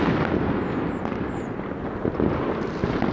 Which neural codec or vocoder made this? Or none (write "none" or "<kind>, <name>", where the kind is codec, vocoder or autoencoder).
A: none